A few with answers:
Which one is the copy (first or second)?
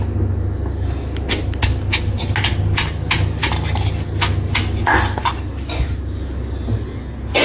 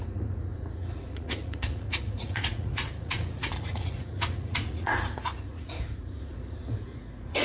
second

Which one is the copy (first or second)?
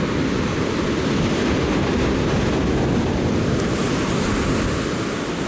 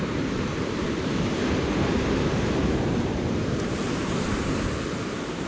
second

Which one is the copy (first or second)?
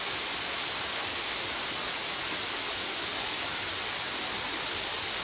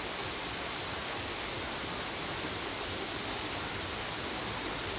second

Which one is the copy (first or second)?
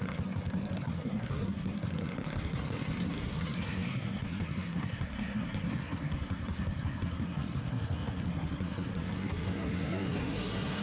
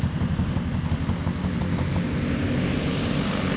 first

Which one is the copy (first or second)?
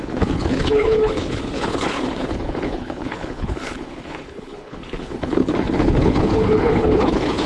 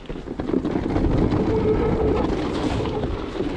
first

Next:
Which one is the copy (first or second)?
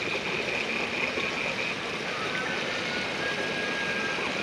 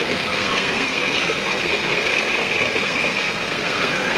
second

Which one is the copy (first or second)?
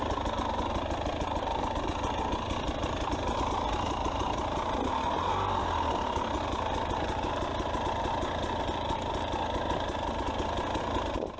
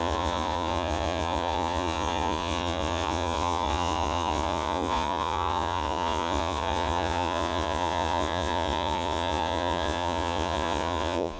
second